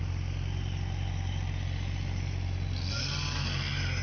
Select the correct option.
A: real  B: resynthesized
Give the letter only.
A